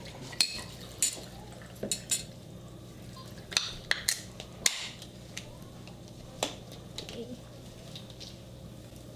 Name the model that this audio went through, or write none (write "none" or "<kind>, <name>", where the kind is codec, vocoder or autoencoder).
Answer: none